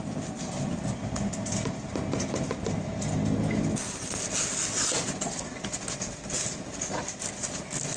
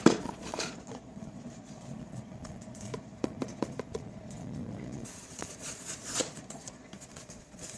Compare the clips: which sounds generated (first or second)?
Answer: second